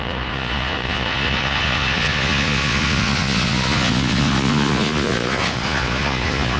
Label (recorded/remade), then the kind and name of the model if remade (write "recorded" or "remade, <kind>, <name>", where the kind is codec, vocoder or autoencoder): remade, vocoder, Vocos